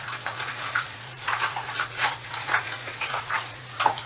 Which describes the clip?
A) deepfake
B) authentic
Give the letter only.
A